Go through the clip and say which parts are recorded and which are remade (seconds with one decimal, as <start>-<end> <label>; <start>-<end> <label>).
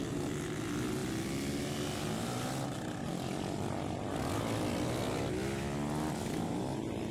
0.0-7.1 recorded